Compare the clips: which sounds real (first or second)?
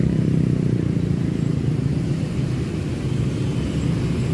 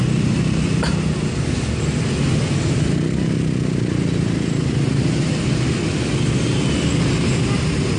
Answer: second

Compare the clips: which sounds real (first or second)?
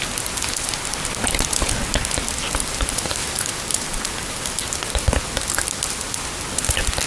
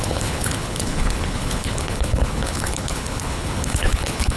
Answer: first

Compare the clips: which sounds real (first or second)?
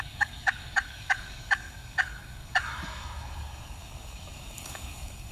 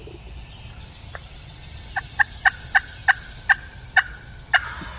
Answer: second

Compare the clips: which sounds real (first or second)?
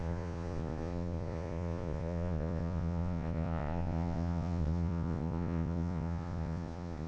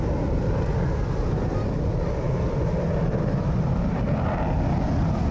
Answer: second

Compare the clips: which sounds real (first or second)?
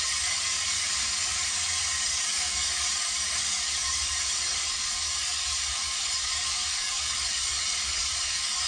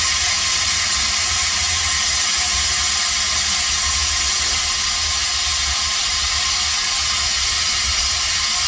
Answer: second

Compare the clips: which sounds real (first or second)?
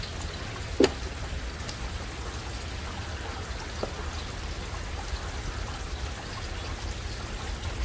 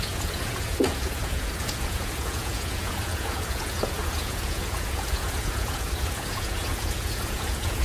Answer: first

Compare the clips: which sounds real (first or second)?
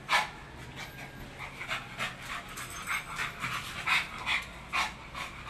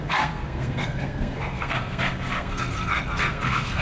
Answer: first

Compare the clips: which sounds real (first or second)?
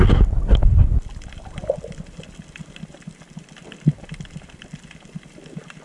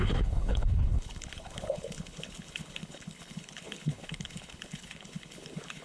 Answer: first